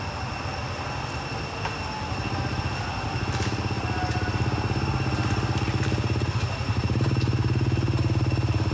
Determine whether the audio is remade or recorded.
recorded